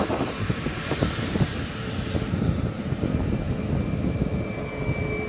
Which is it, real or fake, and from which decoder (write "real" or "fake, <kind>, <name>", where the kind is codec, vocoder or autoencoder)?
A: real